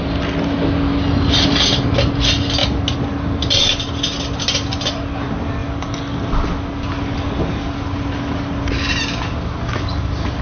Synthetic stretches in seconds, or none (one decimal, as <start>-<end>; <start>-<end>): none